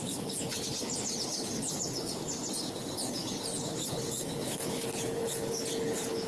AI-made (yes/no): yes